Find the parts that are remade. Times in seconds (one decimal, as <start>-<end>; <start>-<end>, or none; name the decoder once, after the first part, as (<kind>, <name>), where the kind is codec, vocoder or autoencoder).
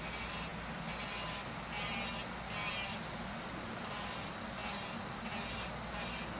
none